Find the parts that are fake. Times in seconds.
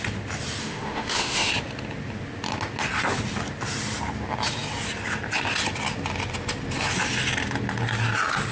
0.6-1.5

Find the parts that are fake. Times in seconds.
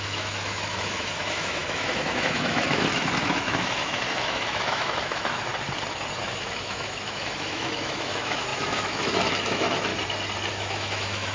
0.0-5.5; 6.2-9.9; 10.5-11.3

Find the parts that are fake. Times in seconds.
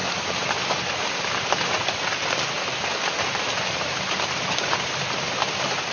none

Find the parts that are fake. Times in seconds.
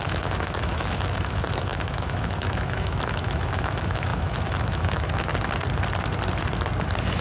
0.0-5.3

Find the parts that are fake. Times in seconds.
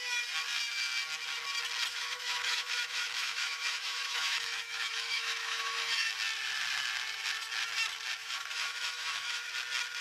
1.9-6.1; 8.2-9.5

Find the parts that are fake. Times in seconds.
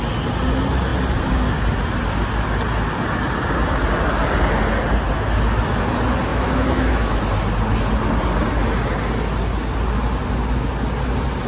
6.3-7.2